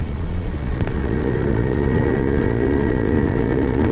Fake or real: fake